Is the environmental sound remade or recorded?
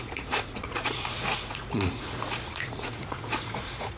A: remade